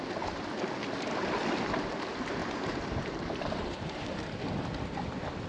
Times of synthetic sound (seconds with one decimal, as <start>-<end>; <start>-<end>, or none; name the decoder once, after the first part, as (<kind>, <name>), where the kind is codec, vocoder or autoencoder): 2.4-4.4 (vocoder, BigVGAN v2)